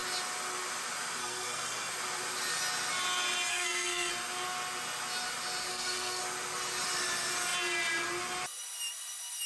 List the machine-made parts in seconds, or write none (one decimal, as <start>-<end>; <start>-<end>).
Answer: 1.2-1.9; 3.5-4.1; 5.7-6.2